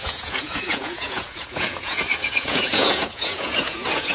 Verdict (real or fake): fake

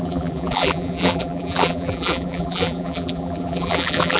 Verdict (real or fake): fake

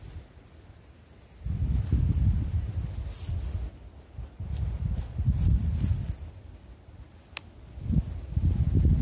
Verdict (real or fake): real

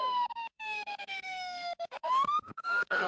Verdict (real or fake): fake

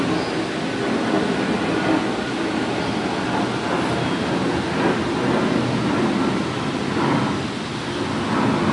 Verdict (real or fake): real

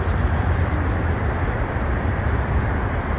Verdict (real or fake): fake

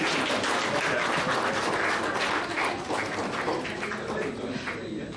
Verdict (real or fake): real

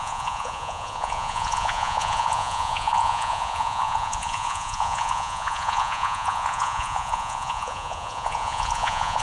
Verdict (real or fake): fake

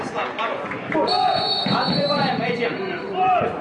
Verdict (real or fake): fake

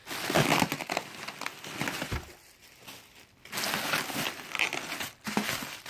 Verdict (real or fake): real